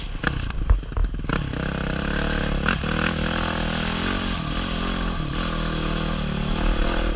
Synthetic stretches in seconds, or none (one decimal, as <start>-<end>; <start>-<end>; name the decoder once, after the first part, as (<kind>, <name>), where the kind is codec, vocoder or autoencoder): none